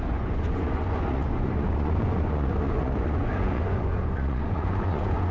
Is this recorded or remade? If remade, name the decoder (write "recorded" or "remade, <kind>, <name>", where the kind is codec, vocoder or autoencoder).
remade, vocoder, Vocos